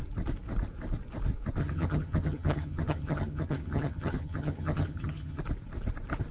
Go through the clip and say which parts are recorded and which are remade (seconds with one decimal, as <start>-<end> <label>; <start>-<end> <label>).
0.0-1.6 recorded; 1.6-5.4 remade; 5.4-6.3 recorded